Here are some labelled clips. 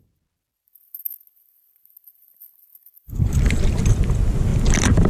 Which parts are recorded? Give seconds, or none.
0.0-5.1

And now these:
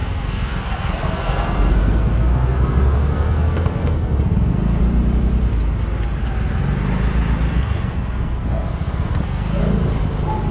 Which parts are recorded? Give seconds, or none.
4.8-7.5; 9.6-10.5

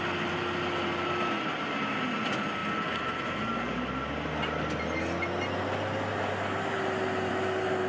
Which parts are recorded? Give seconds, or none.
0.0-7.9

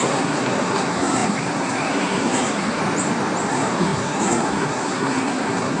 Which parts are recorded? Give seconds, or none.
2.8-3.5